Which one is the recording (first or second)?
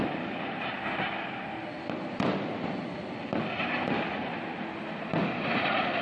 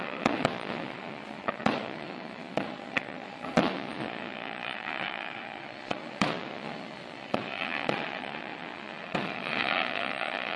first